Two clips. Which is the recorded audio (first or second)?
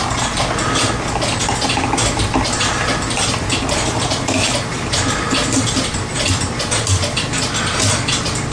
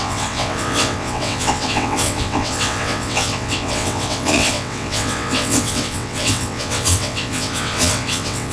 first